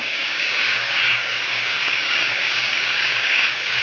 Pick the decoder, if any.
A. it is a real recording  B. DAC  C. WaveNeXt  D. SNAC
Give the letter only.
B